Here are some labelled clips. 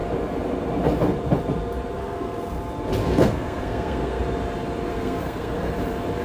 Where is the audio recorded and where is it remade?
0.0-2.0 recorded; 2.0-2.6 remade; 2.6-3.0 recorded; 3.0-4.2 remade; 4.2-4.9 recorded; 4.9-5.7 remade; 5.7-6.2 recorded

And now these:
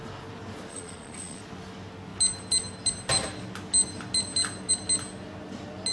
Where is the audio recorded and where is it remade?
0.0-0.7 recorded; 0.7-1.4 remade; 1.4-5.9 recorded

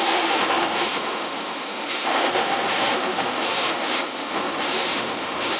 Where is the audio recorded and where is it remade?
0.0-5.6 remade

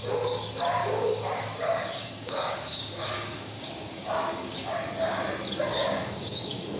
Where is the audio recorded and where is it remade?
0.0-0.8 recorded; 0.8-4.8 remade; 4.8-5.7 recorded; 5.7-6.8 remade

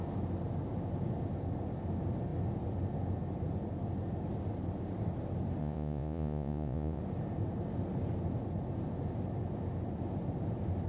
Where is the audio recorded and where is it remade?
0.0-5.6 recorded; 5.6-7.0 remade; 7.0-10.9 recorded

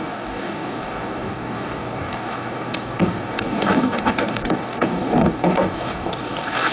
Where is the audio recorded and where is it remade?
0.0-6.7 remade

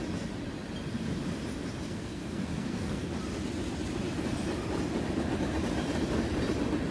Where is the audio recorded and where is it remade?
0.0-1.8 recorded; 1.8-3.1 remade; 3.1-6.9 recorded

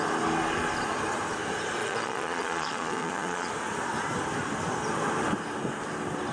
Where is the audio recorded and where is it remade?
0.0-1.8 recorded; 1.8-3.5 remade; 3.5-6.3 recorded